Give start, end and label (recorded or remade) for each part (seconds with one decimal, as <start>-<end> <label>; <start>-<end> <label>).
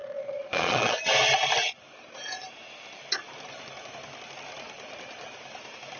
0.0-1.0 remade; 1.0-6.0 recorded